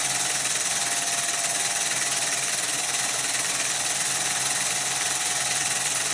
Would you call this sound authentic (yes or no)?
no